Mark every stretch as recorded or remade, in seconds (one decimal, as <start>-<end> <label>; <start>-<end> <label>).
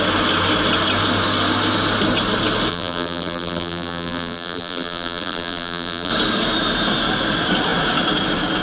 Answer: 0.0-2.7 recorded; 2.7-6.1 remade; 6.1-8.6 recorded